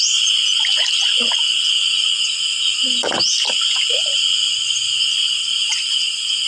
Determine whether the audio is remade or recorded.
recorded